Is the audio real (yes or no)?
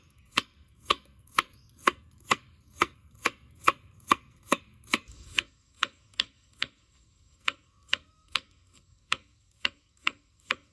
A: no